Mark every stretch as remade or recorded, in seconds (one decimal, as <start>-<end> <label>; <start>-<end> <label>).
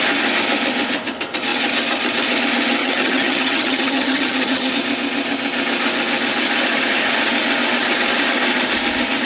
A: 0.0-2.8 recorded; 2.8-4.7 remade; 4.7-9.3 recorded